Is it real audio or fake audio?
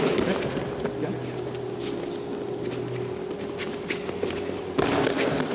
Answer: real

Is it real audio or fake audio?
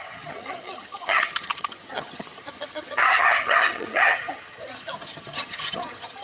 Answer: fake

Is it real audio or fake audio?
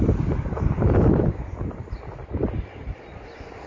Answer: real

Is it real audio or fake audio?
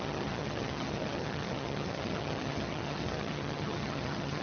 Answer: fake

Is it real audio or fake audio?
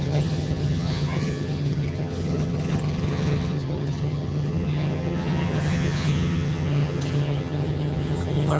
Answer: fake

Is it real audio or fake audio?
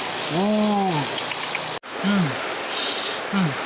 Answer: real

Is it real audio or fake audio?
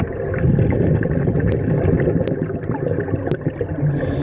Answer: real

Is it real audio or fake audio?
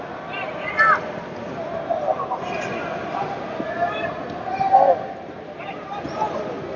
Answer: real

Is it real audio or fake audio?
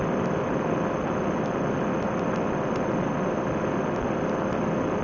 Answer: real